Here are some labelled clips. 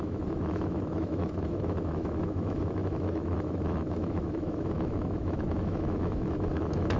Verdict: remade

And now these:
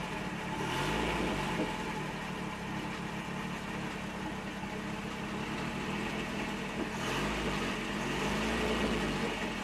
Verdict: recorded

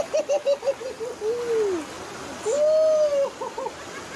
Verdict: recorded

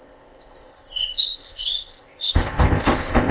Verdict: remade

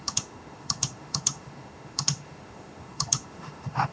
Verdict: remade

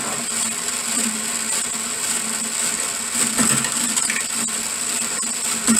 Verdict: recorded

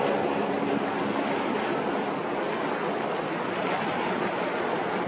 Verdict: recorded